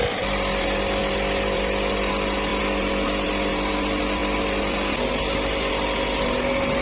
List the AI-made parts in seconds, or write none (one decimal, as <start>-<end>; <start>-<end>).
none